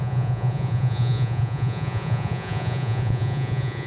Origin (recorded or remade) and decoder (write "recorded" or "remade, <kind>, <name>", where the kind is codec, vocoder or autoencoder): remade, vocoder, Vocos